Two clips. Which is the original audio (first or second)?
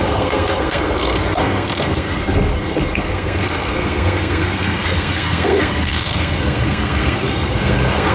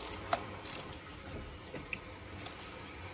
second